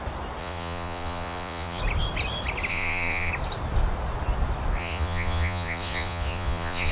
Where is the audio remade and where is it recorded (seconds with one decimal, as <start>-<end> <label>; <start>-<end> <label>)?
0.0-0.4 recorded; 0.4-1.8 remade; 1.8-2.7 recorded; 2.7-3.3 remade; 3.3-4.8 recorded; 4.8-6.9 remade